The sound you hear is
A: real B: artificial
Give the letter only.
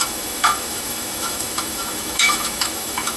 B